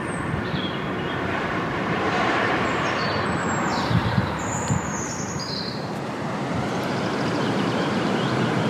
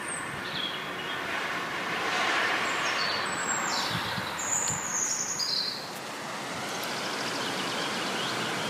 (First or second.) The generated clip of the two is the first